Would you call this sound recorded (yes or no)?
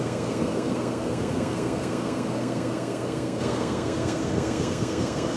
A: no